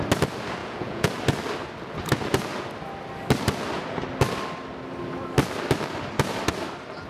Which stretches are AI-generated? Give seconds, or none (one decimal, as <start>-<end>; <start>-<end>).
0.6-1.1